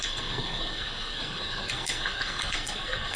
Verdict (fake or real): fake